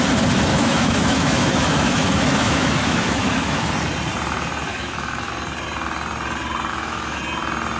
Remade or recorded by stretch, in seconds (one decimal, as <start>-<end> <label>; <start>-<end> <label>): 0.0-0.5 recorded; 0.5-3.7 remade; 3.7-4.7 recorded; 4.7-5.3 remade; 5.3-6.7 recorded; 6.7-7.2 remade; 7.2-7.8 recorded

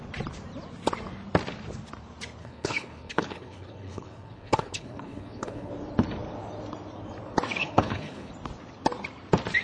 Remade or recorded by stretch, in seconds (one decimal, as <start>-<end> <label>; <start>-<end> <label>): 0.0-2.4 recorded; 2.4-5.7 remade; 5.7-7.6 recorded; 7.6-8.3 remade; 8.3-9.6 recorded

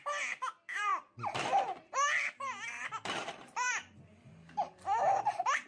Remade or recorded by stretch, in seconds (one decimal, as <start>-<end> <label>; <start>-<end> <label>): 0.0-5.7 remade

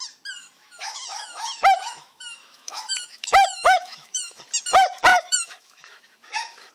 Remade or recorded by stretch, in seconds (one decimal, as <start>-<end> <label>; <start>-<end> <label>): 0.0-0.4 recorded; 0.4-4.4 remade; 4.4-5.1 recorded; 5.1-6.7 remade

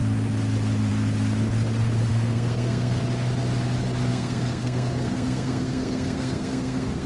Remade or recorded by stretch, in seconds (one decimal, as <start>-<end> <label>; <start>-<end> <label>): 0.0-2.1 recorded; 2.1-3.0 remade; 3.0-4.1 recorded; 4.1-7.1 remade

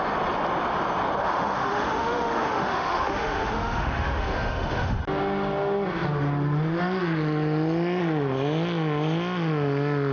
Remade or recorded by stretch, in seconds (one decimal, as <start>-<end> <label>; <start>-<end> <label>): 0.0-1.2 recorded; 1.2-5.0 remade; 5.0-10.1 recorded